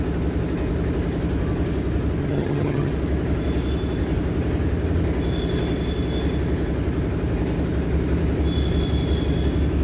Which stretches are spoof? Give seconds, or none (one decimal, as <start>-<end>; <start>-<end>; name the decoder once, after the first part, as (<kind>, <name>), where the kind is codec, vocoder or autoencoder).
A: 2.2-2.9 (vocoder, HiFi-GAN)